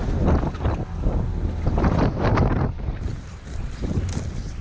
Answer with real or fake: real